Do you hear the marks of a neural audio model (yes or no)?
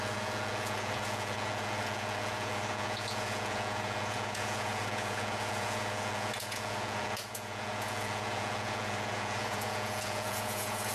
yes